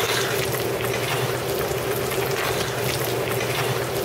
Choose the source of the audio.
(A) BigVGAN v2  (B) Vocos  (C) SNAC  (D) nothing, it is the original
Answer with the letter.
D